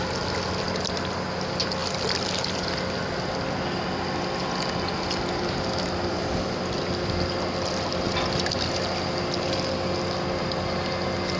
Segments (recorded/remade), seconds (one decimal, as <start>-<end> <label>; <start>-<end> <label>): 0.0-11.4 recorded